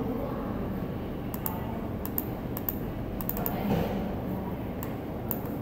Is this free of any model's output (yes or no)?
yes